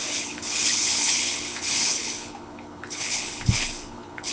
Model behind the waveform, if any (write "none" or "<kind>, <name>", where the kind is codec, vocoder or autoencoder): codec, HILCodec